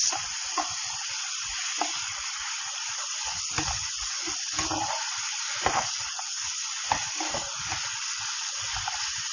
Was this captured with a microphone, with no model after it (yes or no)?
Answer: yes